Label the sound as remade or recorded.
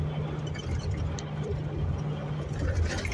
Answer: recorded